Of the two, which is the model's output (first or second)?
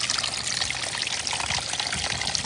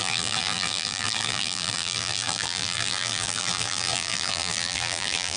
second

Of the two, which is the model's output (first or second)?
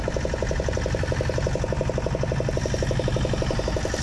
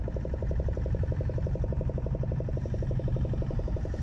second